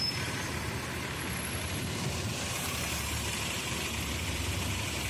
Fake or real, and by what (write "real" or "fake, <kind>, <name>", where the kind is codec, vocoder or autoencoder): fake, vocoder, BigVGAN v2